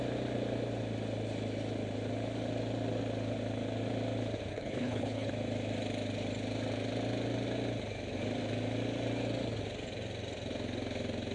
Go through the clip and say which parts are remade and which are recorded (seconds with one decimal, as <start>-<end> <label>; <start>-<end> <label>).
0.0-4.5 recorded; 4.5-5.3 remade; 5.3-11.3 recorded